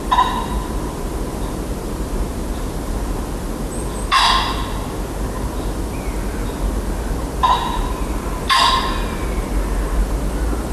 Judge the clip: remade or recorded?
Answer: recorded